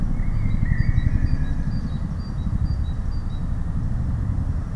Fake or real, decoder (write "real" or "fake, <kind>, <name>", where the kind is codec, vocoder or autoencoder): real